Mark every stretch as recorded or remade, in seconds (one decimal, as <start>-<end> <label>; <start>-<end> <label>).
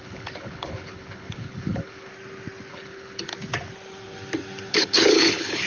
0.0-2.1 remade; 2.1-2.7 recorded; 2.7-3.3 remade; 3.3-4.7 recorded; 4.7-5.7 remade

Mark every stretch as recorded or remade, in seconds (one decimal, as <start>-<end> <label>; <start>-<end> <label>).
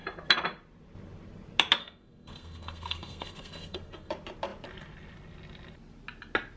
0.0-1.8 recorded; 1.8-4.1 remade; 4.1-6.6 recorded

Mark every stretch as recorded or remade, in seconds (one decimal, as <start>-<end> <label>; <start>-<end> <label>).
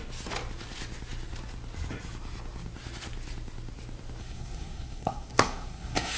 0.0-4.2 recorded; 4.2-6.2 remade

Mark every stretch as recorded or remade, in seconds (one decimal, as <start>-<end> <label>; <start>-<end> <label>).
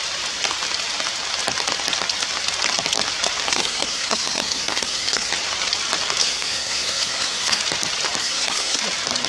0.0-3.5 recorded; 3.5-5.3 remade; 5.3-6.2 recorded; 6.2-7.6 remade; 7.6-8.2 recorded; 8.2-8.8 remade; 8.8-9.3 recorded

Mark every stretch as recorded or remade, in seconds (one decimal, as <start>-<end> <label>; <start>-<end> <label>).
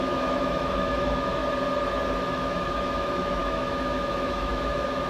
0.0-1.4 remade; 1.4-2.2 recorded; 2.2-5.1 remade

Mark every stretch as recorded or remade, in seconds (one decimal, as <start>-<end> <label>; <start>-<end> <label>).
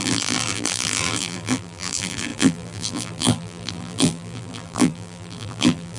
0.0-6.0 remade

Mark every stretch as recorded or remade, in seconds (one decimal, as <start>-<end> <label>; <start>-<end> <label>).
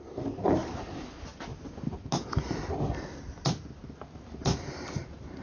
0.0-1.5 remade; 1.5-4.7 recorded; 4.7-5.4 remade